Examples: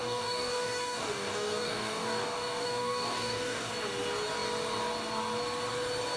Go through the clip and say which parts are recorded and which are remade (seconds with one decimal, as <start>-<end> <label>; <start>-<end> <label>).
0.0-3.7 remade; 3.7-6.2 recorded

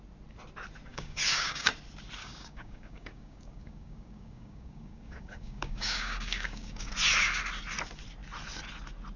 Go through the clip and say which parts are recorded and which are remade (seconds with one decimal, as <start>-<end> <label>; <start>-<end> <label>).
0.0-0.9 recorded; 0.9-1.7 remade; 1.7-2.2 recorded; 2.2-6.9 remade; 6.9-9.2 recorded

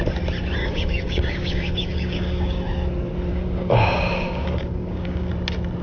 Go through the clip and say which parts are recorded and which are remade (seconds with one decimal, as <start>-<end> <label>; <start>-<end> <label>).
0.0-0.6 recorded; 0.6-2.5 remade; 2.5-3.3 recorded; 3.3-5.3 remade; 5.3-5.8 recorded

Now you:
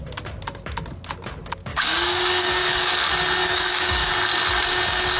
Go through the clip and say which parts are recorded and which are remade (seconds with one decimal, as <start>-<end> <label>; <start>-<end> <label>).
0.0-1.7 recorded; 1.7-2.9 remade; 2.9-3.4 recorded; 3.4-4.1 remade; 4.1-5.2 recorded

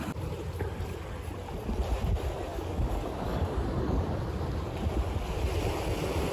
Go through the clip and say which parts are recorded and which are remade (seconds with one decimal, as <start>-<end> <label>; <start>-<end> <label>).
0.0-2.5 recorded; 2.5-4.2 remade; 4.2-6.3 recorded

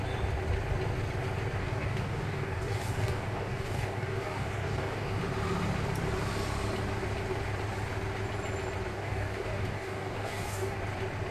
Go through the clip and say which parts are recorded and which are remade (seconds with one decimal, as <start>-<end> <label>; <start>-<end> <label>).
0.0-1.6 recorded; 1.6-5.2 remade; 5.2-8.9 recorded; 8.9-10.8 remade; 10.8-11.3 recorded

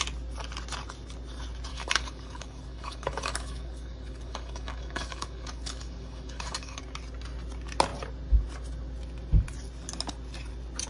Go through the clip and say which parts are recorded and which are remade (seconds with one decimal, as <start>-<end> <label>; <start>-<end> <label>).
0.0-1.7 recorded; 1.7-6.8 remade; 6.8-10.9 recorded